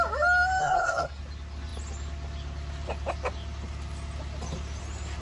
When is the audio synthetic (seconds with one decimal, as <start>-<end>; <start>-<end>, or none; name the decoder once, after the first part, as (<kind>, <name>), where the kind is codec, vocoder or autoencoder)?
0.6-1.2 (codec, SNAC)